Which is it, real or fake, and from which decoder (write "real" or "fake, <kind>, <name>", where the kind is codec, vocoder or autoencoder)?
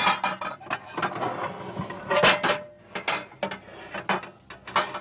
real